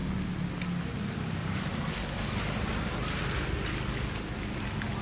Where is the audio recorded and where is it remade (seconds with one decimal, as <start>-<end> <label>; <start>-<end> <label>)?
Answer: 0.0-1.4 recorded; 1.4-3.7 remade; 3.7-5.0 recorded